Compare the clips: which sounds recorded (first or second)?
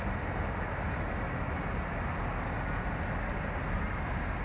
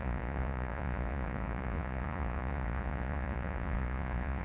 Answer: first